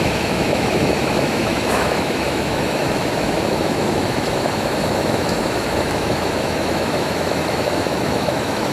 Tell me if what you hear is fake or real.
fake